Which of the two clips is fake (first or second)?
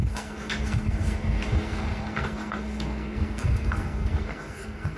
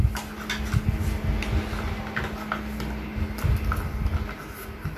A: first